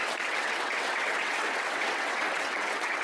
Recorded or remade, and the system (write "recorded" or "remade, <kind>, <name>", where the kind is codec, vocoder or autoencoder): remade, vocoder, WaveNeXt